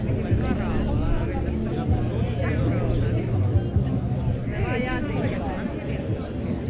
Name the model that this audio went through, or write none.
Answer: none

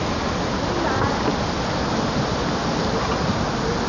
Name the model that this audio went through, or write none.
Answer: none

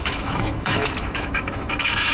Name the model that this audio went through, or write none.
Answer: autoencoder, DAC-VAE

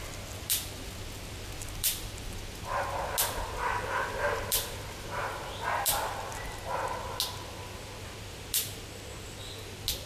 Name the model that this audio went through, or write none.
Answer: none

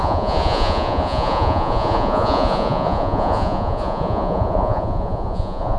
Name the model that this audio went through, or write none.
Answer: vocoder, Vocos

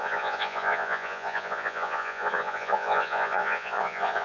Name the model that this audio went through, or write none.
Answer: vocoder, Vocos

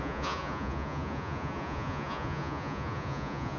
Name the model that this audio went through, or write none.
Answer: vocoder, Vocos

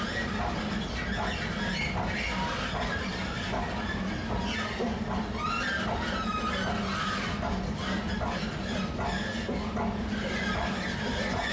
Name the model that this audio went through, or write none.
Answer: none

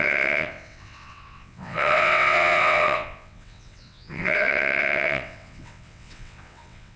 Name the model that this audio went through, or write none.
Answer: vocoder, WaveNeXt